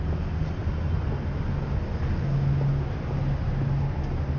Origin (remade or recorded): recorded